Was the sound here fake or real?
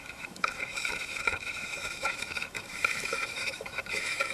fake